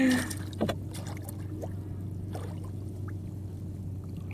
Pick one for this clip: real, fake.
real